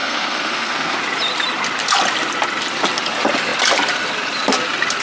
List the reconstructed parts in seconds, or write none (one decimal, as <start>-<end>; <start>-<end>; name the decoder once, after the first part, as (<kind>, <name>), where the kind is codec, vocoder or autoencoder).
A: 0.0-1.0 (codec, SNAC)